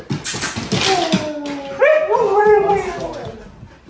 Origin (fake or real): real